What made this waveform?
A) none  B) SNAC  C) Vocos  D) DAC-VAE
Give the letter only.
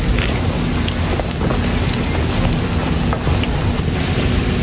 A